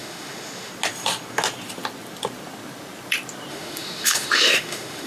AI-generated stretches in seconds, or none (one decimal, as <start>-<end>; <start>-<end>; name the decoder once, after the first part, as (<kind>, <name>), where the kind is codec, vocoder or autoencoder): 0.0-0.7 (autoencoder, DAC-VAE); 3.5-5.1